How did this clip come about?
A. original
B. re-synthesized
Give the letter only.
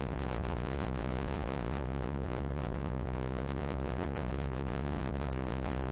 B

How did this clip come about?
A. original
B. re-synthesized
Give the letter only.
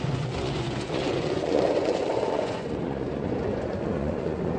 B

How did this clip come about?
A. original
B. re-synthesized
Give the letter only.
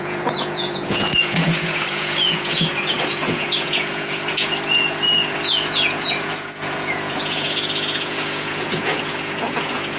B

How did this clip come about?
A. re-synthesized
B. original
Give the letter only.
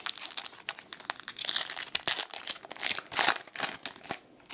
B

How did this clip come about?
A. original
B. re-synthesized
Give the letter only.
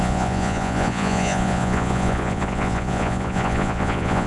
B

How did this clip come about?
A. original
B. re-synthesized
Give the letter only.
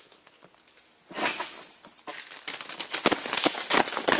A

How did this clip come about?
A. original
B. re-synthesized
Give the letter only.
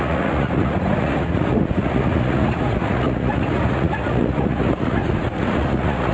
B